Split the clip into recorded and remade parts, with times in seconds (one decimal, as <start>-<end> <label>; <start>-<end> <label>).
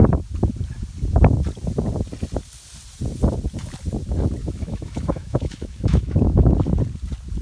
0.0-4.4 recorded; 4.4-6.5 remade; 6.5-7.4 recorded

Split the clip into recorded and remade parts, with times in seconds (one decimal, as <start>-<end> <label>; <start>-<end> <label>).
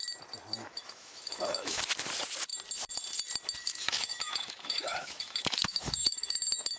0.0-0.6 recorded; 0.6-1.8 remade; 1.8-3.6 recorded; 3.6-6.8 remade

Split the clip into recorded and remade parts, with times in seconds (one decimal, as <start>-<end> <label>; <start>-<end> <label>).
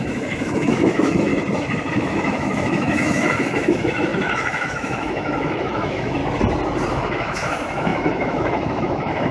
0.0-1.3 remade; 1.3-1.9 recorded; 1.9-6.2 remade; 6.2-6.9 recorded; 6.9-9.3 remade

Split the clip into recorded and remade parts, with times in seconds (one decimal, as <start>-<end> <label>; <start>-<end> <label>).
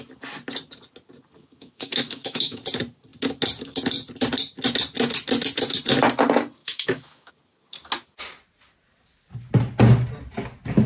0.0-1.4 recorded; 1.4-2.6 remade; 2.6-6.6 recorded; 6.6-7.3 remade; 7.3-10.9 recorded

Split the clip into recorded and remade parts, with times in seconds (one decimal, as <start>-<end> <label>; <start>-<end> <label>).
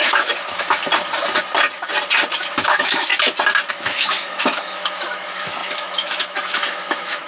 0.0-0.8 remade; 0.8-2.6 recorded; 2.6-3.1 remade; 3.1-3.7 recorded; 3.7-7.3 remade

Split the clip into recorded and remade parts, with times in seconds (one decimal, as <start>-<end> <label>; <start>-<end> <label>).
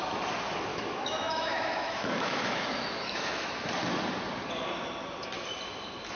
0.0-0.7 recorded; 0.7-3.7 remade; 3.7-6.2 recorded